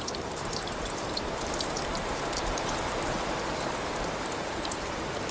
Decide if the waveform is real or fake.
fake